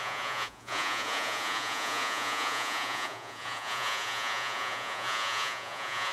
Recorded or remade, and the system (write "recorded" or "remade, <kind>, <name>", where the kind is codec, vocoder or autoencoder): remade, vocoder, Vocos